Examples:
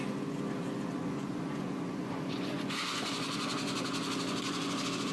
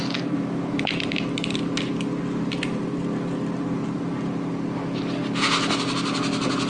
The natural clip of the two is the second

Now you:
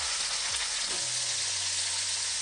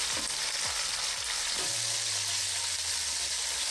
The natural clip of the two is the second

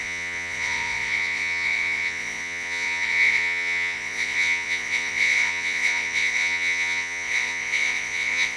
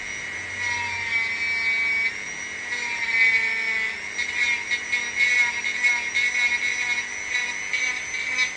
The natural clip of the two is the second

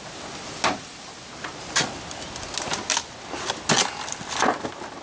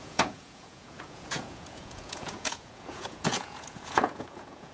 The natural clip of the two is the first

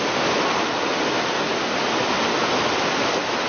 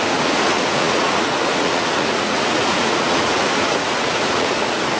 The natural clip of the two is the first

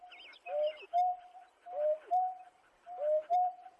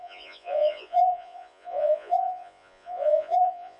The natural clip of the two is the first